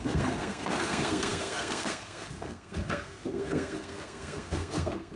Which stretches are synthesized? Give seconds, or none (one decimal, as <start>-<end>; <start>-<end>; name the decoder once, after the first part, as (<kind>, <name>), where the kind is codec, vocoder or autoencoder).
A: 0.0-5.2 (codec, SNAC)